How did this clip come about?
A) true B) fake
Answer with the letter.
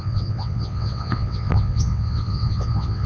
B